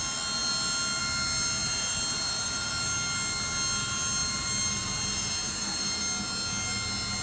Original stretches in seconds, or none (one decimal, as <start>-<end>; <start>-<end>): 0.0-1.6; 2.7-4.2; 6.0-7.2

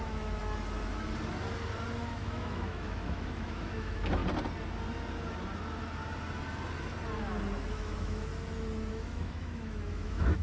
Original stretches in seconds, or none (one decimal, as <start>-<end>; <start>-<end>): 0.4-2.1; 4.2-7.7; 8.3-8.9

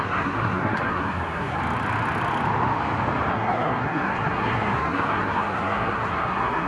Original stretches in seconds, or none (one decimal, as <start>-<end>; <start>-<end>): 1.6-3.3

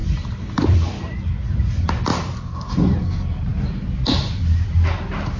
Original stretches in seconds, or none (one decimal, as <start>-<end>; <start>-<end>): 1.7-2.1; 2.7-5.4

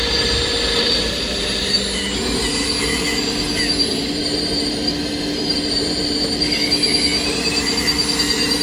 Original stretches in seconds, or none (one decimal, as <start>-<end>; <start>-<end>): 0.0-8.6

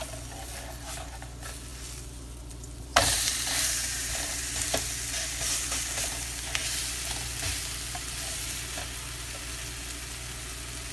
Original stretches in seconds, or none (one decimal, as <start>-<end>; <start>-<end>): 0.0-2.9; 4.1-10.9